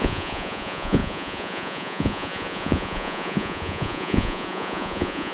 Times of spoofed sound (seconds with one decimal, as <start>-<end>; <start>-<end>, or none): 0.0-5.3